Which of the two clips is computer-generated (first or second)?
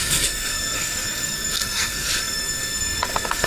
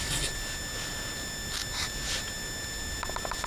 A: first